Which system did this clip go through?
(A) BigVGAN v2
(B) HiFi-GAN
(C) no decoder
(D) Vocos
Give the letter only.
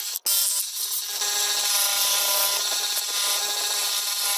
C